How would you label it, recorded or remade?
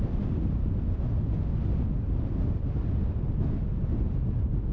recorded